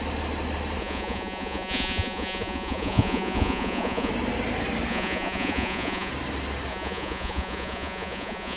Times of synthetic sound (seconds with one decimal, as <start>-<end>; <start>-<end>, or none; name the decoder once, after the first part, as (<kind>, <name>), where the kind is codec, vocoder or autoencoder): 0.8-4.1 (vocoder, Vocos); 4.9-6.1; 6.7-8.6